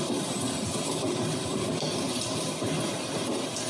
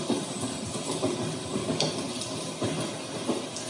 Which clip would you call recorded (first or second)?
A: second